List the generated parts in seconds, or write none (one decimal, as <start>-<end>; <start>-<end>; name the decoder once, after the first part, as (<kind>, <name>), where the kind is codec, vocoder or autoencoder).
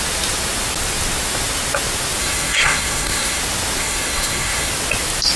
2.2-3.4 (codec, SNAC); 3.8-4.7